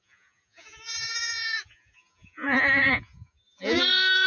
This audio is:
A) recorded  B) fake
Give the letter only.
B